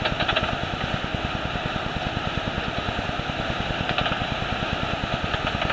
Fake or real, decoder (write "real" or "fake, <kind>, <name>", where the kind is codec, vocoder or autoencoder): real